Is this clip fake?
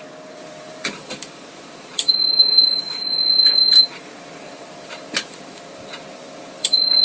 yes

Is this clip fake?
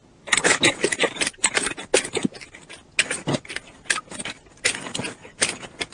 no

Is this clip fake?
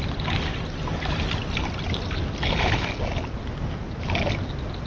no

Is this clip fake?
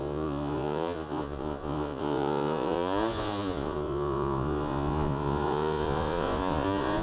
yes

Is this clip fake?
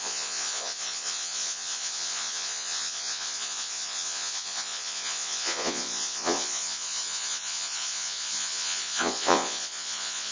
yes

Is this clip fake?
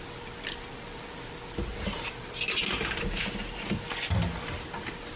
no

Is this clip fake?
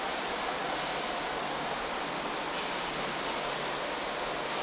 no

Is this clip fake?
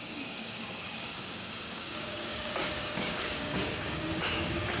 yes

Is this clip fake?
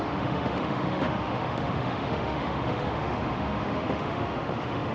yes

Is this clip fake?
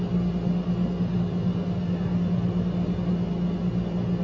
no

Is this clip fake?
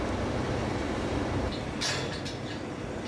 no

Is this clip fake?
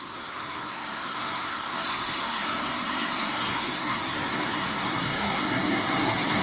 yes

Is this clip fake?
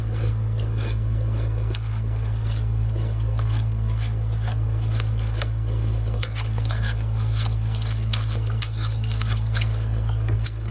yes